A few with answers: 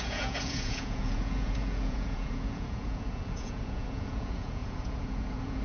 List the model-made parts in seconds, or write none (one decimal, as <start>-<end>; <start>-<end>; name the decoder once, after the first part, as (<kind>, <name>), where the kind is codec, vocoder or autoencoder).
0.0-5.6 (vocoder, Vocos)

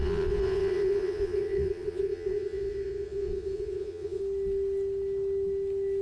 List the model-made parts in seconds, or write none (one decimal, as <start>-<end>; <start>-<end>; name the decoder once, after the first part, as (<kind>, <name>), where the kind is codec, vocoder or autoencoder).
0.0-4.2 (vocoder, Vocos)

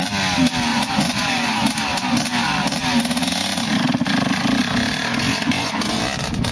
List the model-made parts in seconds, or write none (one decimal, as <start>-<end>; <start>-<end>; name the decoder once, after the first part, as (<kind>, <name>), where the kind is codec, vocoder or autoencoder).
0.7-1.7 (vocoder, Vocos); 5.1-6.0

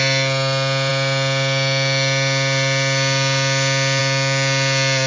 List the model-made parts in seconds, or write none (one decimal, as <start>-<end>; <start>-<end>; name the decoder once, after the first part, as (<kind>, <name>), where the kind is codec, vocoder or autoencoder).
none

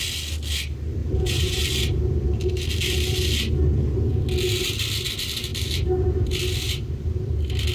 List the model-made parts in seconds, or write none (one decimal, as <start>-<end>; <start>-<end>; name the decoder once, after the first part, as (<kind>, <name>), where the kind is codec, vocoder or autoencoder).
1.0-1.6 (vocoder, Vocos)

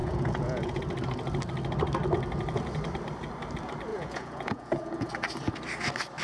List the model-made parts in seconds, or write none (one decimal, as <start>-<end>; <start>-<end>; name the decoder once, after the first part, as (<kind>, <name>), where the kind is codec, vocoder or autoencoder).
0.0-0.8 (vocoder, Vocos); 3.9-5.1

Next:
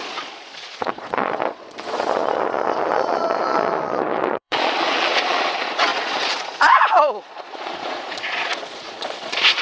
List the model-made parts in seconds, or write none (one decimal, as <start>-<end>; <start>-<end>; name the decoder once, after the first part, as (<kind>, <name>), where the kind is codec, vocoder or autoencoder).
0.0-9.6 (vocoder, Vocos)

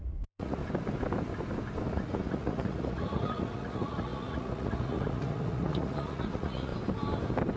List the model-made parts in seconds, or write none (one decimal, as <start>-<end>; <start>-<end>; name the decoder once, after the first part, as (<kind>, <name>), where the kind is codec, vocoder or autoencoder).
0.0-0.6 (vocoder, Vocos); 1.9-6.7